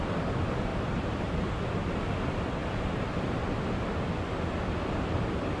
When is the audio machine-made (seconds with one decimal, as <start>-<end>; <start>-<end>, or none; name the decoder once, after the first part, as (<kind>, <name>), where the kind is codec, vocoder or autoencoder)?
0.7-1.3 (vocoder, BigVGAN v2); 2.6-3.2